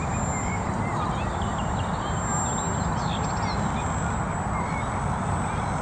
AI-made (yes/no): no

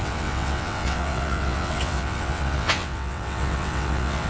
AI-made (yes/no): yes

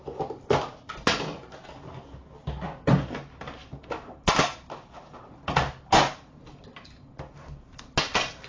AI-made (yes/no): no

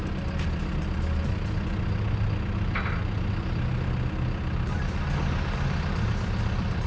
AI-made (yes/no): no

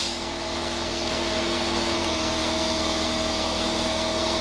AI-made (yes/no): yes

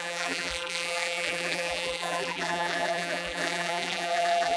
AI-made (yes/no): yes